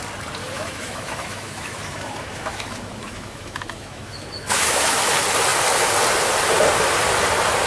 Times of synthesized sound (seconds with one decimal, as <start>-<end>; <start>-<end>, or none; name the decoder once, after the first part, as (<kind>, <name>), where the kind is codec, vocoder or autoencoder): 0.4-5.0 (autoencoder, DAC-VAE)